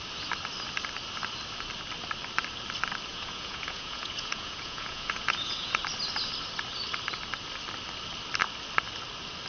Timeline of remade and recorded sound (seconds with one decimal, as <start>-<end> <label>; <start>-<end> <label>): 0.0-3.1 recorded; 3.1-5.8 remade; 5.8-9.5 recorded